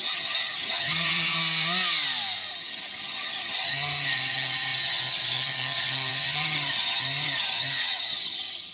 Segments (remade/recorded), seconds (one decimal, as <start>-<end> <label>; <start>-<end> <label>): 0.0-1.4 remade; 1.4-2.5 recorded; 2.5-8.7 remade